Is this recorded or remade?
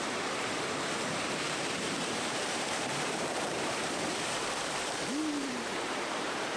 remade